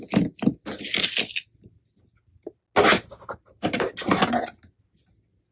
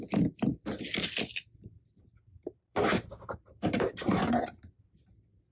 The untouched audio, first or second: first